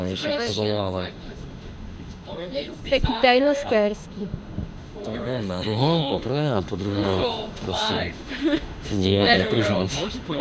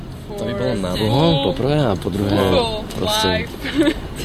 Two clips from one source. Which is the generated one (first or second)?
first